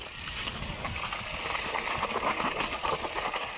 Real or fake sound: real